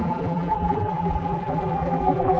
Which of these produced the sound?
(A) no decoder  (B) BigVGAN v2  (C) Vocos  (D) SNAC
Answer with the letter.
B